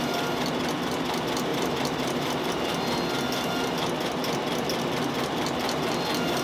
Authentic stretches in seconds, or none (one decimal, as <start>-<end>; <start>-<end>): 0.0-1.5; 2.5-6.4